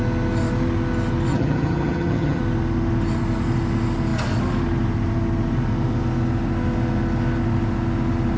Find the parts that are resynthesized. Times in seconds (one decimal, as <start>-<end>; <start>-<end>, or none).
1.3-2.4

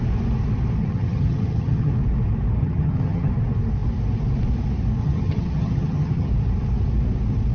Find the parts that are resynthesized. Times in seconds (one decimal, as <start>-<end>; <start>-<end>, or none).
0.8-1.9; 2.6-3.3; 5.0-6.3

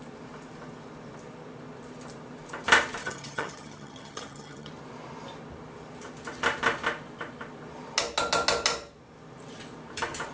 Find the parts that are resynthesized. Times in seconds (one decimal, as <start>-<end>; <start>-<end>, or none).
3.0-4.7

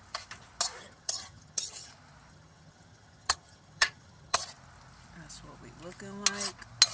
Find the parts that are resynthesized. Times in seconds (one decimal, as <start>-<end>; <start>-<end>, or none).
0.8-1.9; 2.3-4.4

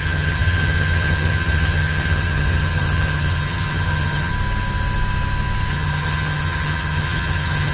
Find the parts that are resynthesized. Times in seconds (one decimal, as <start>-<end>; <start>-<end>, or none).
0.0-4.3; 5.7-7.7